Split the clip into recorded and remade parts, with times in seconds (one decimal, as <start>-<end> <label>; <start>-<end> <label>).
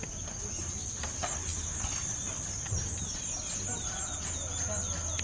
0.0-5.2 recorded